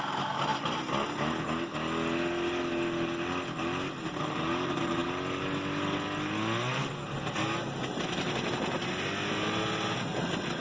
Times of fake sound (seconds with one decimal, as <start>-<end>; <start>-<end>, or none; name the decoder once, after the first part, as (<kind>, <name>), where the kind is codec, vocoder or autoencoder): none